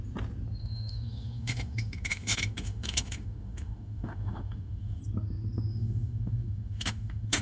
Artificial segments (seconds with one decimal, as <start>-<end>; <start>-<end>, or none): 0.6-5.0; 5.7-7.4